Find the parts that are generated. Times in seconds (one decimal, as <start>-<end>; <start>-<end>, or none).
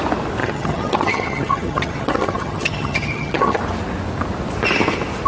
0.4-3.6